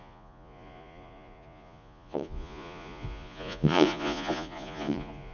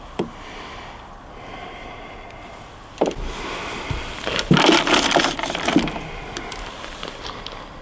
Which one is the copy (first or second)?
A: first